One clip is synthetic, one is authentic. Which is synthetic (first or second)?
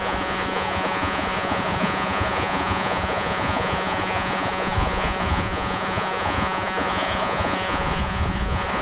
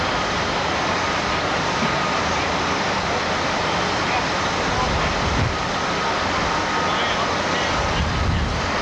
first